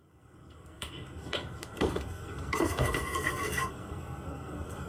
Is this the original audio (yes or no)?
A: no